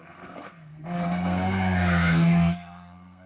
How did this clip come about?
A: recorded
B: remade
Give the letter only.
B